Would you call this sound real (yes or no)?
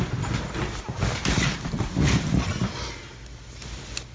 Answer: yes